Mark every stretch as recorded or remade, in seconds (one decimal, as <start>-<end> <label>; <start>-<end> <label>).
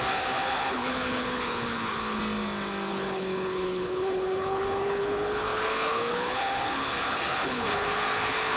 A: 0.0-2.2 remade; 2.2-2.9 recorded; 2.9-8.6 remade